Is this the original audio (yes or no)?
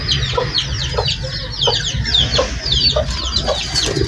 yes